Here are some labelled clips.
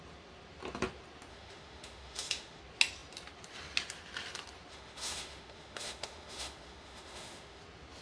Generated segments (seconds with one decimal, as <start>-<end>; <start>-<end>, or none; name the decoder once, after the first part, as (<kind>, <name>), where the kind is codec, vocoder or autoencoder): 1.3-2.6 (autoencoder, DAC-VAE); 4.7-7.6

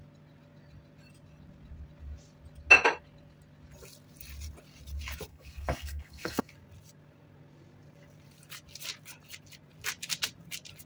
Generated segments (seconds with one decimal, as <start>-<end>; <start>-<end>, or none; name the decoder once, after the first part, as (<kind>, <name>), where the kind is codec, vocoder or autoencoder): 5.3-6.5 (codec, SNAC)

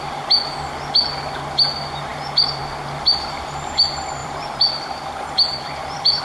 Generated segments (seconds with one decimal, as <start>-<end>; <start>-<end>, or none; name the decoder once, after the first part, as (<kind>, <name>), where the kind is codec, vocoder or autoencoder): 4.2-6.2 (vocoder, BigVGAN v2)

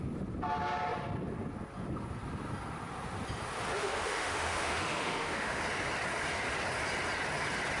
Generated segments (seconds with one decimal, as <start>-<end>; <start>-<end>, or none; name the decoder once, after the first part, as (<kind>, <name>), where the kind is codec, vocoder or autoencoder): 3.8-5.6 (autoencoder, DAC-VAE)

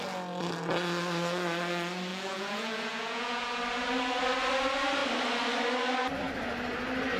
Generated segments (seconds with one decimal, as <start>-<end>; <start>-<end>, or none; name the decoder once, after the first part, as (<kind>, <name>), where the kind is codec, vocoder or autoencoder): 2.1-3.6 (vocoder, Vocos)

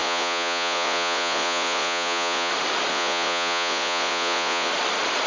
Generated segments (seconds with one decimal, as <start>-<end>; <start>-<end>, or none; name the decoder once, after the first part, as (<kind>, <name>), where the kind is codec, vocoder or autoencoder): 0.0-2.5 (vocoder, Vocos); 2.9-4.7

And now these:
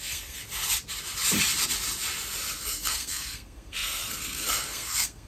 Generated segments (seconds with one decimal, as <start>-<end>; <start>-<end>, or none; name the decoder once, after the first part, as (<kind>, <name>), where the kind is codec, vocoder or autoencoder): 0.0-0.4 (codec, SNAC); 2.6-5.3

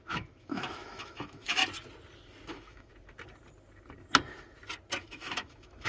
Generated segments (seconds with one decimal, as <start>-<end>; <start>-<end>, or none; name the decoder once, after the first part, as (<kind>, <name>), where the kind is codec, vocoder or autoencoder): 0.0-1.6 (autoencoder, DAC-VAE); 2.5-2.9; 5.0-5.9